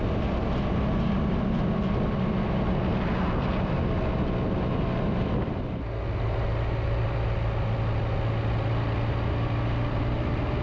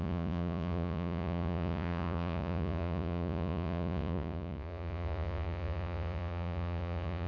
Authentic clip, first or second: first